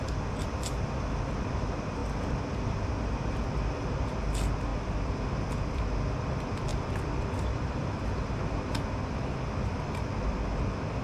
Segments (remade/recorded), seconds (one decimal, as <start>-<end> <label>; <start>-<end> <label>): 0.0-4.7 recorded; 4.7-5.2 remade; 5.2-6.7 recorded; 6.7-8.7 remade; 8.7-11.0 recorded